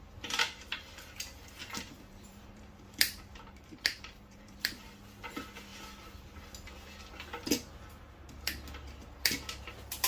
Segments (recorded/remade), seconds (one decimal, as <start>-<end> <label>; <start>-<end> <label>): 0.0-1.6 recorded; 1.6-4.9 remade; 4.9-10.1 recorded